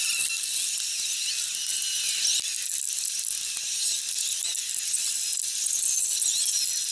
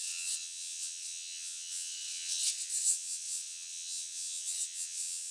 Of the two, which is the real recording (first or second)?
first